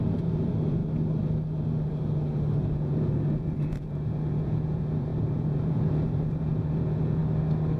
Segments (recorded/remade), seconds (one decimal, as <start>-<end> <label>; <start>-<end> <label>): 0.0-0.8 remade; 0.8-2.7 recorded; 2.7-7.2 remade; 7.2-7.8 recorded